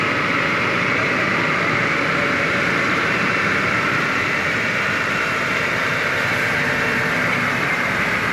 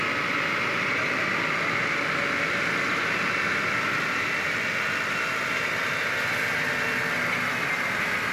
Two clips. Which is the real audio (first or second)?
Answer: second